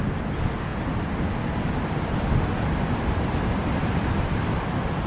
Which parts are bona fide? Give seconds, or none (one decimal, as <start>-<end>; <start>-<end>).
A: 0.0-5.1